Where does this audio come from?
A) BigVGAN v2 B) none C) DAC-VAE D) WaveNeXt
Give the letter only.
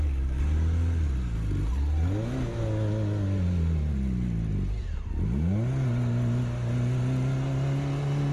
B